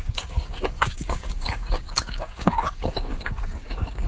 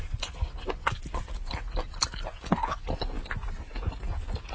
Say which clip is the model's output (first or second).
first